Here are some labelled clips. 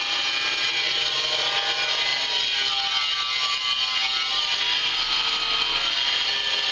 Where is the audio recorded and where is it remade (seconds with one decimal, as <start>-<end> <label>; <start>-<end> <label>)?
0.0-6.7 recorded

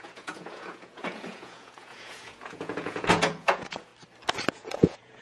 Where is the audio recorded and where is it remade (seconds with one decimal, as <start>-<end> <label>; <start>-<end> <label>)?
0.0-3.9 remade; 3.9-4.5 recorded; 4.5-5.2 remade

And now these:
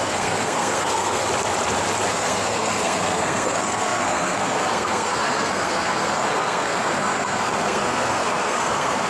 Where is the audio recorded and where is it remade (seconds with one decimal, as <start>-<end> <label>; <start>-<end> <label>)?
0.0-1.2 remade; 1.2-2.1 recorded; 2.1-9.1 remade

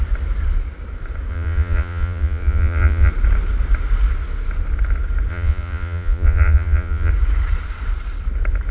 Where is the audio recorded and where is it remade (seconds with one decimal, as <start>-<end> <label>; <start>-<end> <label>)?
0.0-1.3 recorded; 1.3-3.1 remade; 3.1-5.3 recorded; 5.3-7.1 remade; 7.1-8.7 recorded

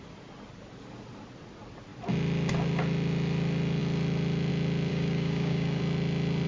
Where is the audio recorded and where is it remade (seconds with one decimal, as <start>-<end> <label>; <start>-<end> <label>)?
0.0-4.9 recorded; 4.9-5.8 remade; 5.8-6.5 recorded